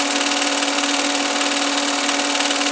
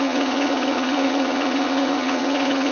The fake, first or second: second